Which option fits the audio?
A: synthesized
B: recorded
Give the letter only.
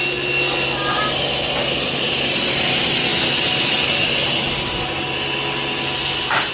B